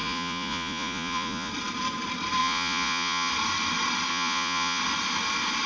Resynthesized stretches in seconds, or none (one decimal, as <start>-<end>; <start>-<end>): 0.0-1.5; 2.4-3.3; 4.1-4.8